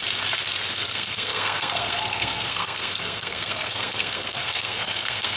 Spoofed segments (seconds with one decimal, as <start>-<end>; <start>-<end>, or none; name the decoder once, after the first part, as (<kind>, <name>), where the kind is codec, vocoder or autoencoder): 0.7-5.4 (codec, SNAC)